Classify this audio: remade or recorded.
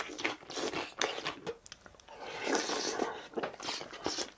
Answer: recorded